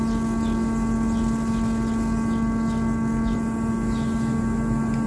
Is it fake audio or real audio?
real